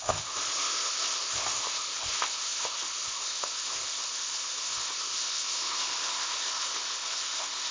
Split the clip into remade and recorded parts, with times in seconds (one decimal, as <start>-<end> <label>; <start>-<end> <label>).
0.0-7.7 remade